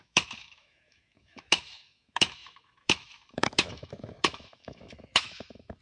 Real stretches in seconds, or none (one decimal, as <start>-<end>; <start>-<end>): none